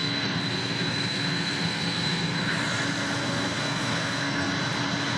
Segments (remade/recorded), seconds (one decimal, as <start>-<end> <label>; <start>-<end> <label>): 0.0-2.5 remade; 2.5-3.2 recorded; 3.2-4.5 remade; 4.5-5.2 recorded